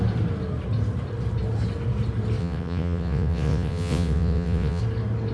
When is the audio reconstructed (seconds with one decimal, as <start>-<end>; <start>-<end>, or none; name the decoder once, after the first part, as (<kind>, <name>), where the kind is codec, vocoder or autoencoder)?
2.4-4.8 (vocoder, WaveNeXt)